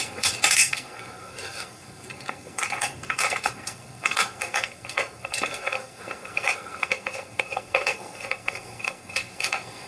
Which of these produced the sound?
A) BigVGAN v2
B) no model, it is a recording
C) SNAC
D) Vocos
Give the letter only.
C